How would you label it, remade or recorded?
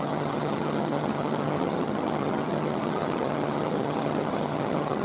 remade